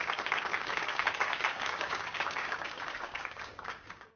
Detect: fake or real fake